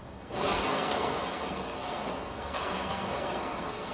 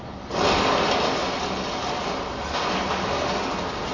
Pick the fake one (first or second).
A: first